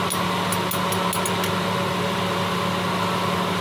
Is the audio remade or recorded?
recorded